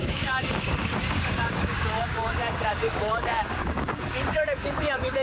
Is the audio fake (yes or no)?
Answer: yes